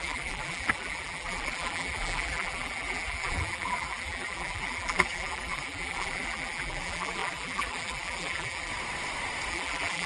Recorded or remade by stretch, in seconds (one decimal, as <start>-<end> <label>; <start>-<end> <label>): 0.0-8.7 remade; 8.7-9.5 recorded; 9.5-10.1 remade